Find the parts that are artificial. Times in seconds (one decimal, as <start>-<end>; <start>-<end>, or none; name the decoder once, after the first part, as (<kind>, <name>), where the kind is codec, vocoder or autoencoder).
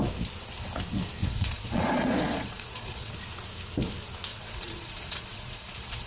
1.2-3.1 (vocoder, Vocos); 4.3-6.1